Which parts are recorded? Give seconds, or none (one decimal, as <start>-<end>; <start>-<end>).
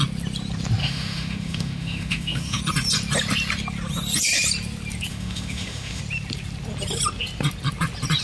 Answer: 0.0-0.8; 2.6-5.1; 6.0-8.2